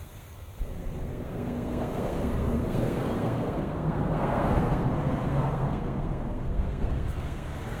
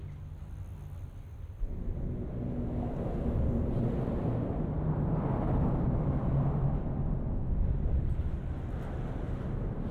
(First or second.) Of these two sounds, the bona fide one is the second